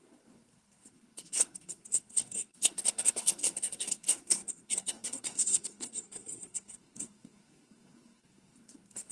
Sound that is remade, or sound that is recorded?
remade